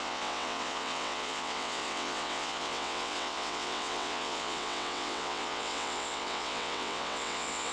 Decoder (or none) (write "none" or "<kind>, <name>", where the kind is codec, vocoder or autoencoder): vocoder, WaveNeXt